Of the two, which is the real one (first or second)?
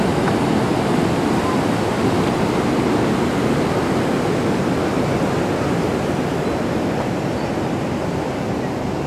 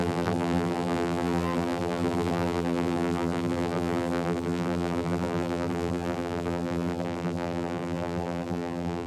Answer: first